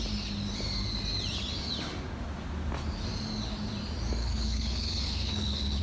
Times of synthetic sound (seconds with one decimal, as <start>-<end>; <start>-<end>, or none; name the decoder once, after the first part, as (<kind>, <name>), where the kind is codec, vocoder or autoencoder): 4.2-5.8 (codec, HILCodec)